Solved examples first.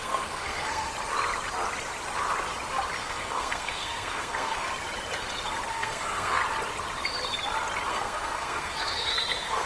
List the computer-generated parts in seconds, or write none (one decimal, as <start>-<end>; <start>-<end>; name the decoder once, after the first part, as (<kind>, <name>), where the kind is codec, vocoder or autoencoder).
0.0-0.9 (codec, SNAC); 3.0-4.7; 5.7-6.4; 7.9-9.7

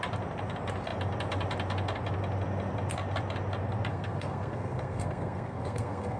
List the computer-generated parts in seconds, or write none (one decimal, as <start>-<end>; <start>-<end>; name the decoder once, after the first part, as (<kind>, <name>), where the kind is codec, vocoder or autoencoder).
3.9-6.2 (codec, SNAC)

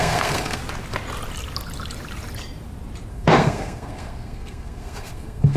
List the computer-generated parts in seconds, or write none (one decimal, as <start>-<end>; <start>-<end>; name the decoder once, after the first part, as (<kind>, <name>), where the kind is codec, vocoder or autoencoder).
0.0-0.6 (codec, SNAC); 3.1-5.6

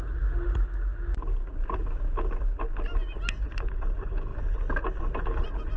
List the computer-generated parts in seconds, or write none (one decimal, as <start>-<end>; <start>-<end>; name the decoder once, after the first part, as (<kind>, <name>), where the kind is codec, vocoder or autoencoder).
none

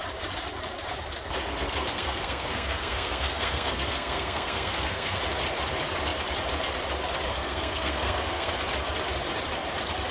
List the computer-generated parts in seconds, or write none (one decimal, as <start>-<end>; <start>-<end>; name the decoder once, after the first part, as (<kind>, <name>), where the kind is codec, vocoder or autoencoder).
1.5-5.2 (codec, SNAC); 7.3-8.5